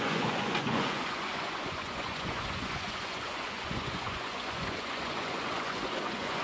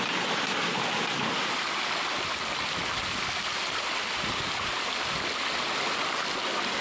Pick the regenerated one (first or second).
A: first